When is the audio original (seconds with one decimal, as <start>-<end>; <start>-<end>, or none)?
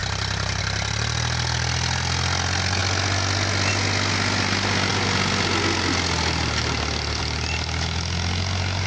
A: 0.0-8.9